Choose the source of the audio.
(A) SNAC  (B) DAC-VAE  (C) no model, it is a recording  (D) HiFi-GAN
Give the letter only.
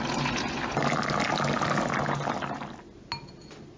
C